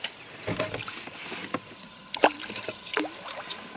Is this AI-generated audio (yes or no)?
no